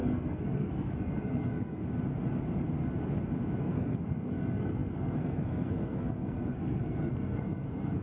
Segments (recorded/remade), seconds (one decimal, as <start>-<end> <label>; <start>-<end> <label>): 0.0-1.8 remade; 1.8-3.6 recorded; 3.6-8.0 remade